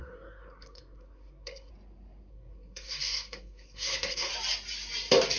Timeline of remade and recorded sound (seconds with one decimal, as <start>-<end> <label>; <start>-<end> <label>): 0.0-1.7 remade; 1.7-2.3 recorded; 2.3-4.3 remade; 4.3-5.4 recorded